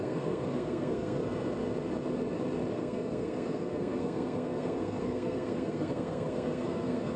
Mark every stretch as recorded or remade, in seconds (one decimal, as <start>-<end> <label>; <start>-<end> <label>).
0.0-1.2 remade; 1.2-2.7 recorded; 2.7-7.2 remade